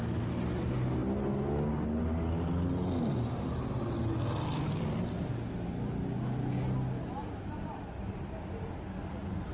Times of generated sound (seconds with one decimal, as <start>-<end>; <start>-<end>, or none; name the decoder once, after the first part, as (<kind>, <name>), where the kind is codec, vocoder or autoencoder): none